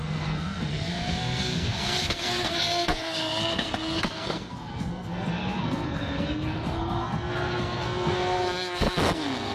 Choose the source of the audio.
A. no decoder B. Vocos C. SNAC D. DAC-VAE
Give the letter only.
C